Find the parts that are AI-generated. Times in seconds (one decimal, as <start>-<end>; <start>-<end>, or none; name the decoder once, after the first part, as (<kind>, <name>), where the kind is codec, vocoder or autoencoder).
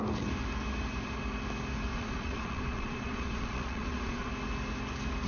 1.9-4.3 (vocoder, Vocos)